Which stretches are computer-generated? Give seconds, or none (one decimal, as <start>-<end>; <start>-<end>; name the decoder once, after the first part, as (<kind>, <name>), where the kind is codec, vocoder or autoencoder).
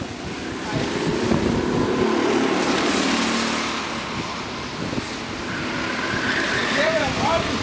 1.1-1.6 (vocoder, BigVGAN v2); 6.6-7.6